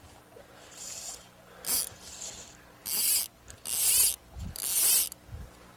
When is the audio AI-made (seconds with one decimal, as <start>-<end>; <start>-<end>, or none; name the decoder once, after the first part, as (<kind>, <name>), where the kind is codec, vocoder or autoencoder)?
none